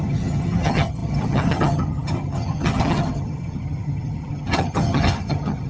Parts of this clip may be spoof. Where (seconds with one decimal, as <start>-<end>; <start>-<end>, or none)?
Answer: 0.0-5.7